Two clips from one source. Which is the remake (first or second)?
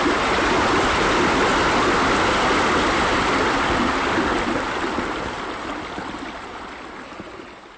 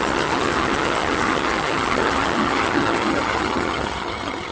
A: second